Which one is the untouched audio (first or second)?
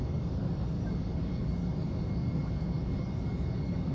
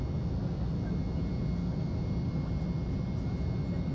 second